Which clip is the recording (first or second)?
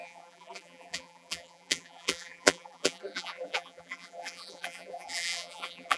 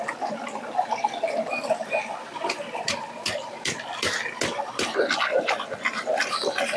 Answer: second